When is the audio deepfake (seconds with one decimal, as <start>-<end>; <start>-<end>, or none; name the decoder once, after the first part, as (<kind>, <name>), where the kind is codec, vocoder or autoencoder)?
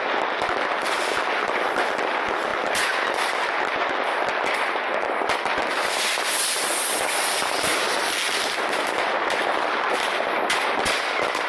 none